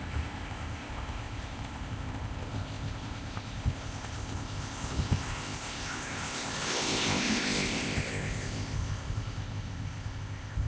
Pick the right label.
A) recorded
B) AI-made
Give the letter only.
B